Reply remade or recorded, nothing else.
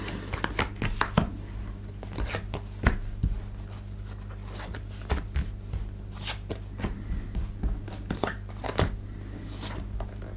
recorded